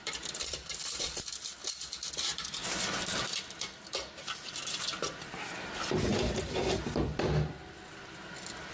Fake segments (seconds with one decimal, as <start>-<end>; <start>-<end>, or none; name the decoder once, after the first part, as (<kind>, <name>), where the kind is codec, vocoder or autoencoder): 0.0-1.6 (vocoder, BigVGAN v2); 2.1-2.6; 3.8-6.1; 6.7-8.7